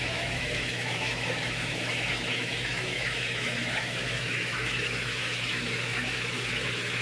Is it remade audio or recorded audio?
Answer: remade